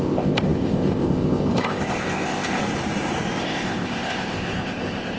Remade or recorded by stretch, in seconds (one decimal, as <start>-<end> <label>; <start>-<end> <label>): 0.0-2.6 remade; 2.6-3.4 recorded; 3.4-5.2 remade